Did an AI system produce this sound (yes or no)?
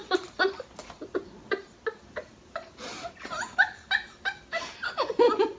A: no